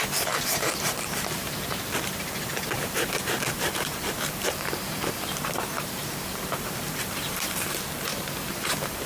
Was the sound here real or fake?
fake